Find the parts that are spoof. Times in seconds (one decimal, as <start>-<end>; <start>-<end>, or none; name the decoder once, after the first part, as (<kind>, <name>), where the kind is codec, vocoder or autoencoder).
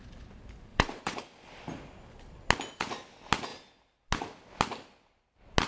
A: 0.7-1.2 (vocoder, Vocos)